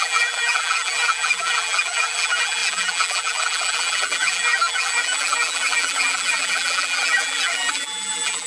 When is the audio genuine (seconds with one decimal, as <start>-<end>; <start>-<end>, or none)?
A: none